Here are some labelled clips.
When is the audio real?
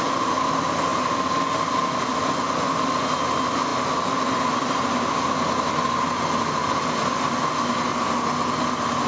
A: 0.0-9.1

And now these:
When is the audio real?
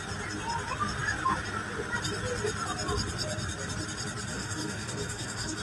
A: 0.0-4.3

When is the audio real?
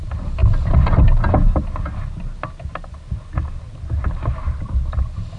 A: 0.0-5.4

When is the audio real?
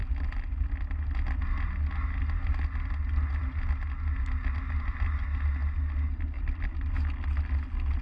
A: 0.0-8.0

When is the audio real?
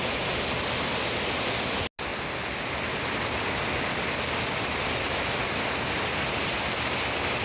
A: 0.0-7.4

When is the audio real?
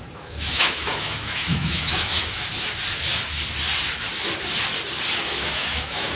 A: 2.5-5.2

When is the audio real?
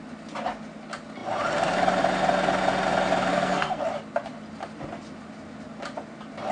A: 0.0-3.3; 3.8-6.5